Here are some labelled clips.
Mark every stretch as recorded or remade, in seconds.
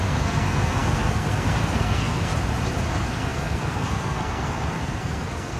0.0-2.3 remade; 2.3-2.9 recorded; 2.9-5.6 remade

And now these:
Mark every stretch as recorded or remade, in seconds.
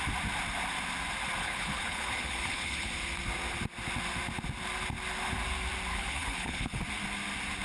0.0-1.4 recorded; 1.4-2.9 remade; 2.9-5.9 recorded; 5.9-6.8 remade; 6.8-7.6 recorded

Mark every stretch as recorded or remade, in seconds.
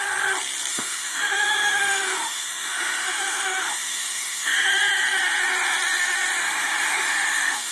0.0-0.7 recorded; 0.7-4.7 remade; 4.7-6.4 recorded; 6.4-7.7 remade